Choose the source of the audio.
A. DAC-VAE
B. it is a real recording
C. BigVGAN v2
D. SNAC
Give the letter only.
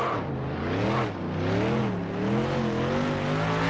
B